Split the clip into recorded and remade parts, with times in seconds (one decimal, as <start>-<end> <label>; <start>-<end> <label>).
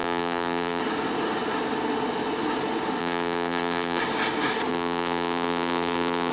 0.0-0.8 remade; 0.8-3.0 recorded; 3.0-4.0 remade; 4.0-4.7 recorded; 4.7-6.3 remade